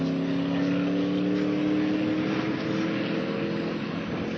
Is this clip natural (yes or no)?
yes